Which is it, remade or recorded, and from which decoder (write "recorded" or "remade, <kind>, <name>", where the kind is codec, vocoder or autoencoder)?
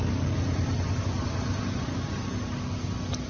recorded